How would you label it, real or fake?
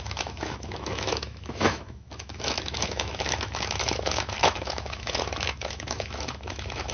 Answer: fake